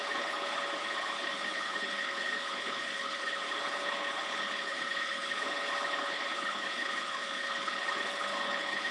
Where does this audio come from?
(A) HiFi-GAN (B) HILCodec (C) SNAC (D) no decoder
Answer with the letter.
B